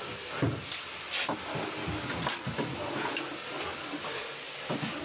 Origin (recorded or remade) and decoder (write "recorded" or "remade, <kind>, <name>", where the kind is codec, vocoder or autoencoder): recorded